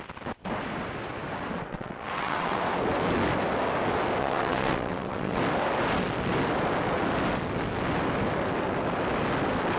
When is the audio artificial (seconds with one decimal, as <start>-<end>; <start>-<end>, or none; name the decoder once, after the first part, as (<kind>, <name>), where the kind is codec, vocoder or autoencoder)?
1.7-2.6 (vocoder, WaveNeXt); 4.2-5.4